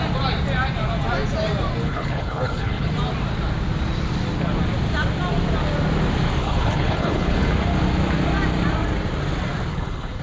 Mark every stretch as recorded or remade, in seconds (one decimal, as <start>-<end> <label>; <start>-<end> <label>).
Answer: 0.0-1.8 recorded; 1.8-2.9 remade; 2.9-6.4 recorded; 6.4-7.5 remade; 7.5-9.7 recorded; 9.7-10.2 remade